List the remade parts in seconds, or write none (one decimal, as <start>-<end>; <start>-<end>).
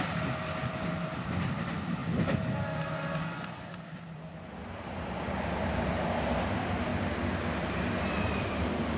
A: 0.0-6.9; 7.5-9.0